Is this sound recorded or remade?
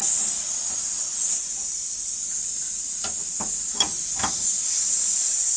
recorded